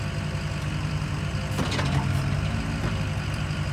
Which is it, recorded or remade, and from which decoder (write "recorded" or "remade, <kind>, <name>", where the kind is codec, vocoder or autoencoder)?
recorded